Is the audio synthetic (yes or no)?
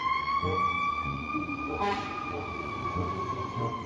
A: yes